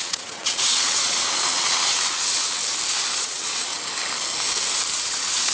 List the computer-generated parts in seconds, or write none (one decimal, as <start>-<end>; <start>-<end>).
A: 0.0-2.6; 3.2-3.7; 5.0-5.5